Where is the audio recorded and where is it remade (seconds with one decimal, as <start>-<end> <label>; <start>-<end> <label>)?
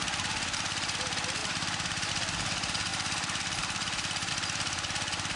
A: 0.0-1.4 recorded; 1.4-2.1 remade; 2.1-2.9 recorded; 2.9-4.3 remade; 4.3-5.4 recorded